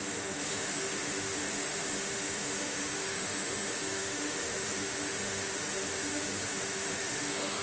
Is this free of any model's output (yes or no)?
no